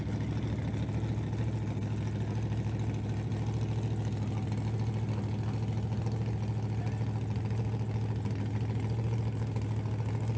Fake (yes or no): no